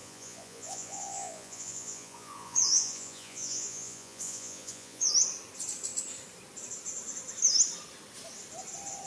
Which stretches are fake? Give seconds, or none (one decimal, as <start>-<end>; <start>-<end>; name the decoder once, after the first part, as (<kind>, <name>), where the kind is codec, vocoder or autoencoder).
0.0-5.1 (vocoder, Vocos)